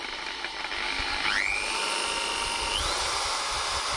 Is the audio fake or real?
real